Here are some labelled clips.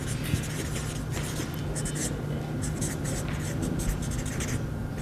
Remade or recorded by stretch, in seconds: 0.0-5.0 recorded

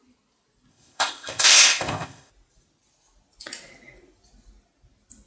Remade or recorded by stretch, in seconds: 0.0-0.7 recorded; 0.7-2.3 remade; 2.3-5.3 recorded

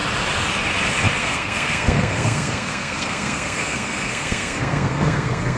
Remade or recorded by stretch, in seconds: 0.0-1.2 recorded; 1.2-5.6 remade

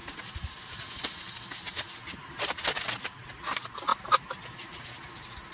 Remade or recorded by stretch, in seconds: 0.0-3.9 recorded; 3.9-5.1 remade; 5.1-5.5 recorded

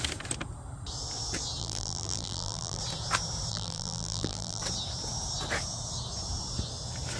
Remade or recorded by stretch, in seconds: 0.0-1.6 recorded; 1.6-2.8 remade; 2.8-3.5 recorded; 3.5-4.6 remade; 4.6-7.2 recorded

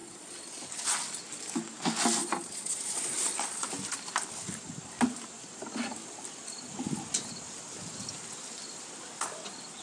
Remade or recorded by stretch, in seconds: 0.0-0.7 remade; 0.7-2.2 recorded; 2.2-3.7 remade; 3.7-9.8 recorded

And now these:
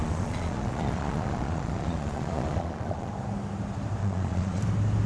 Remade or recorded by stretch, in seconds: 0.0-3.1 remade; 3.1-4.0 recorded; 4.0-4.6 remade; 4.6-5.1 recorded

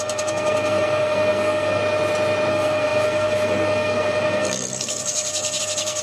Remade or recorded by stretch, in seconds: 0.0-1.8 remade; 1.8-2.5 recorded; 2.5-6.0 remade